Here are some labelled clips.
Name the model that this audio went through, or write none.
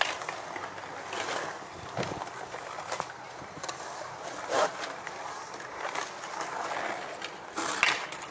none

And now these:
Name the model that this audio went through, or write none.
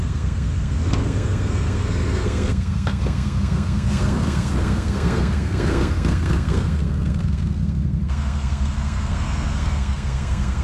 codec, SNAC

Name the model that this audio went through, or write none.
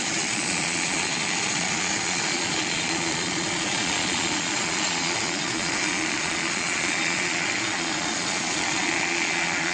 vocoder, Vocos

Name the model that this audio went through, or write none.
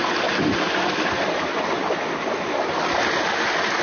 none